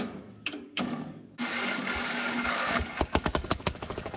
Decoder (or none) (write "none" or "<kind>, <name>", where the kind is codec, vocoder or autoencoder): codec, DAC